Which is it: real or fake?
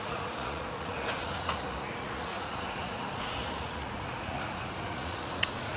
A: fake